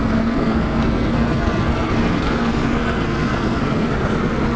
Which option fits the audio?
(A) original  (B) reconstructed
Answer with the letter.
B